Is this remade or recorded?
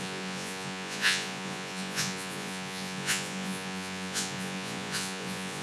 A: remade